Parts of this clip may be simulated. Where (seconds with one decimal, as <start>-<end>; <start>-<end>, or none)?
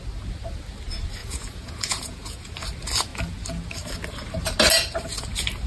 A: 1.2-2.5